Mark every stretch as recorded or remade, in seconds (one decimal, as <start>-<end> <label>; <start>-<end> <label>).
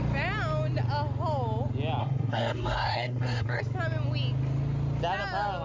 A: 0.0-2.0 recorded; 2.0-3.6 remade; 3.6-5.6 recorded